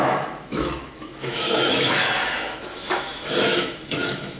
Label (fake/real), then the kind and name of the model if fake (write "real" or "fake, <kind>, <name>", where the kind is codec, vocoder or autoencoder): fake, autoencoder, DAC-VAE